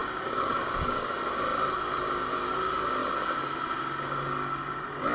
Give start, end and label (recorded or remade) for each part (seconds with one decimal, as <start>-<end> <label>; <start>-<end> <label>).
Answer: 0.0-1.1 remade; 1.1-5.1 recorded